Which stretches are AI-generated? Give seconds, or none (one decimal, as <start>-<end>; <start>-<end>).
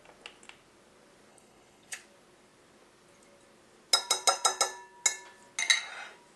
1.3-2.0